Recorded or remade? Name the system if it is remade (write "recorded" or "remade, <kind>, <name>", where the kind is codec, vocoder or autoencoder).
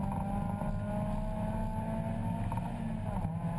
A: recorded